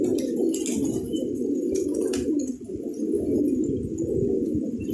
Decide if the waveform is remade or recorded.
recorded